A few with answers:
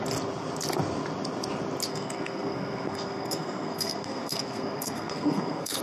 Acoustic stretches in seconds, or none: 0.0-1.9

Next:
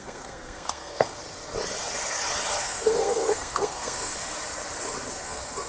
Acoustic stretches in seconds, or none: 1.2-2.6; 4.2-5.1

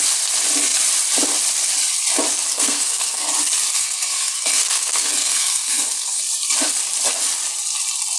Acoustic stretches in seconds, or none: 0.0-2.5; 3.3-3.7; 6.2-8.2

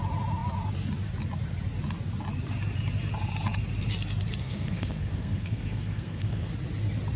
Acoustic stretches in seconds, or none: 0.0-4.4; 6.5-7.2

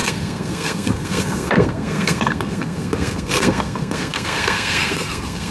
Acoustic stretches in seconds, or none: none